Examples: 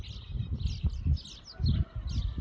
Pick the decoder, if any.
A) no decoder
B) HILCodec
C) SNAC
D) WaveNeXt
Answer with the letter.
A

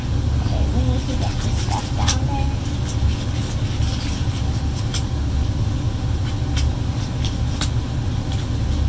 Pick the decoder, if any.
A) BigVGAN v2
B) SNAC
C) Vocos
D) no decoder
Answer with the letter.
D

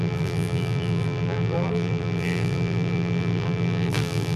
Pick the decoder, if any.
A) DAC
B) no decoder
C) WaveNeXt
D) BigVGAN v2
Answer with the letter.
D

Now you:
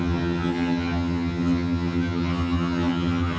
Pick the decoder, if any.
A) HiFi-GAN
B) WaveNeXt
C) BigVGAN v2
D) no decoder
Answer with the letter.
A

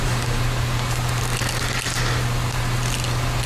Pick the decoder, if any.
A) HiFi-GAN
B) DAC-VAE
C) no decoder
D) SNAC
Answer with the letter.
C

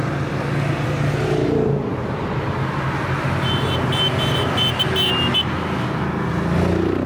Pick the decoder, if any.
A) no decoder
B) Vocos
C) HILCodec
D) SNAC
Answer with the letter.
A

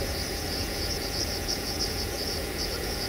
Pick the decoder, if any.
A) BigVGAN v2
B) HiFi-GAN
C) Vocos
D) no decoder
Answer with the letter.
C